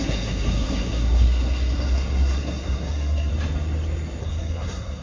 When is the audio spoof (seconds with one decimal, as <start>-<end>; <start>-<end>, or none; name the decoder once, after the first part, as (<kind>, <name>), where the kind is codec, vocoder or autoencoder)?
0.0-3.3 (codec, SNAC); 4.2-5.0